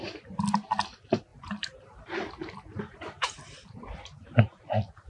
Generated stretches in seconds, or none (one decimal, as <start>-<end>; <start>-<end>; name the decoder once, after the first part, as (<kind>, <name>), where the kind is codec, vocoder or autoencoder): 1.3-4.4 (vocoder, BigVGAN v2)